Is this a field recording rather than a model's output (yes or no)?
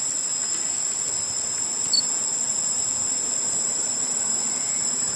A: yes